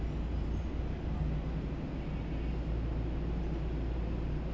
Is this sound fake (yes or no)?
no